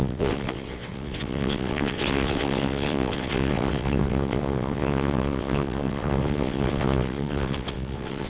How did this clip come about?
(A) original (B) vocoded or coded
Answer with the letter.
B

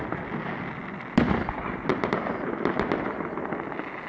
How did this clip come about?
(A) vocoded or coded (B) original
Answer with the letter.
B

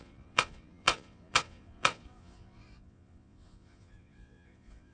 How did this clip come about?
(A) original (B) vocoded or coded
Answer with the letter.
B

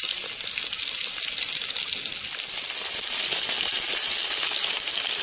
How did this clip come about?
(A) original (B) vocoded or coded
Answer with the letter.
A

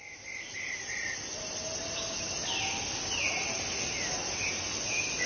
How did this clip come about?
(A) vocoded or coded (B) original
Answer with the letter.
B